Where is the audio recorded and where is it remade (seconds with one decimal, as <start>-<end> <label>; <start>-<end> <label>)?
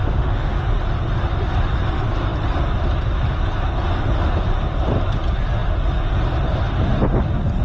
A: 0.0-0.6 remade; 0.6-7.6 recorded